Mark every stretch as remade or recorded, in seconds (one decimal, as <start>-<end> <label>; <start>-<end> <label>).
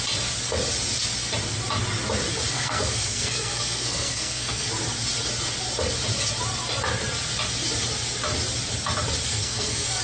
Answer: 0.0-2.3 recorded; 2.3-4.7 remade; 4.7-9.3 recorded; 9.3-10.0 remade